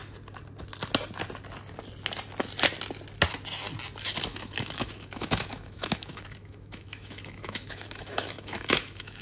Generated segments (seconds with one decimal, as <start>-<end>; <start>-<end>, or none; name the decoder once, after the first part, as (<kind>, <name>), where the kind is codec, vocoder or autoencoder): 4.3-9.2 (autoencoder, DAC-VAE)